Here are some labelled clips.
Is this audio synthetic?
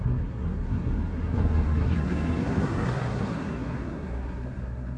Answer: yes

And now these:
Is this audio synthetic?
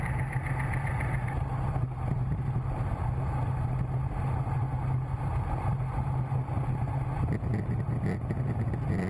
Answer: no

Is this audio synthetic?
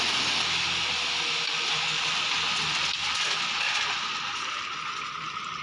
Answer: no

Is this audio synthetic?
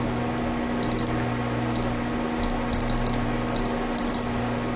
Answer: no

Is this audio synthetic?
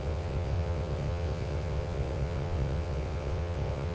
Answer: yes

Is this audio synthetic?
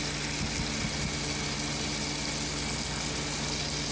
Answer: no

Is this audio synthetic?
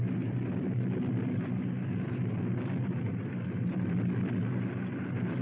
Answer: no